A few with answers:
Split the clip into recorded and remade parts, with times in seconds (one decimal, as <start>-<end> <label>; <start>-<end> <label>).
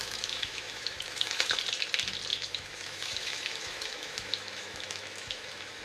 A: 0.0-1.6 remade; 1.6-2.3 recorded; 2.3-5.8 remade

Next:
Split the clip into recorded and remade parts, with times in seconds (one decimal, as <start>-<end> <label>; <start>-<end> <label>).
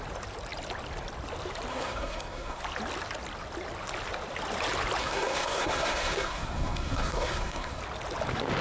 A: 0.0-1.7 recorded; 1.7-2.6 remade; 2.6-5.0 recorded; 5.0-7.8 remade; 7.8-8.6 recorded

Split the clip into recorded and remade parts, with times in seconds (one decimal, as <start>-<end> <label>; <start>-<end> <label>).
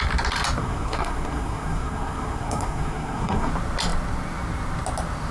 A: 0.0-0.6 recorded; 0.6-3.5 remade; 3.5-5.3 recorded